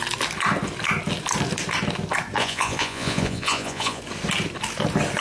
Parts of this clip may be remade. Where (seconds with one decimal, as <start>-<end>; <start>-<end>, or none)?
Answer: 2.4-4.0